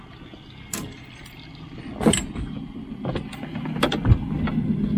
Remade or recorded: recorded